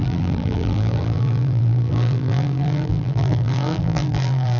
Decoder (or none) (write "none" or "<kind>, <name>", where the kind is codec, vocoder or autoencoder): vocoder, BigVGAN v2